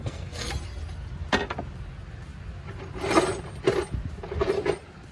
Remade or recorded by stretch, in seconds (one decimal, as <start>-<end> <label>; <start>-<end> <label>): 0.0-0.5 remade; 0.5-5.1 recorded